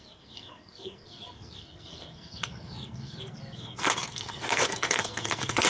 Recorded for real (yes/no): no